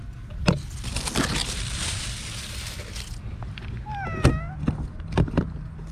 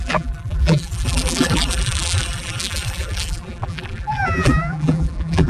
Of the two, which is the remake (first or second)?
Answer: second